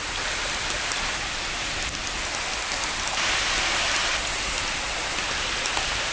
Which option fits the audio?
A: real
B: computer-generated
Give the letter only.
A